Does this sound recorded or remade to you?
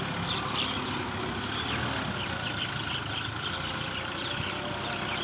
recorded